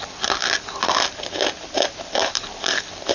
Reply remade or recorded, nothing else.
recorded